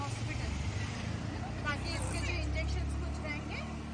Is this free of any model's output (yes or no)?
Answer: yes